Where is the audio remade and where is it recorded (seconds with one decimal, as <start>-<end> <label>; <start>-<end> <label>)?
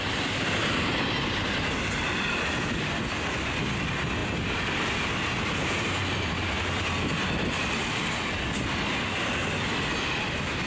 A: 0.0-10.7 recorded